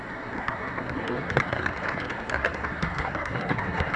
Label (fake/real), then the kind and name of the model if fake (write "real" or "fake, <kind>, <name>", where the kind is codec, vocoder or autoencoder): fake, codec, SNAC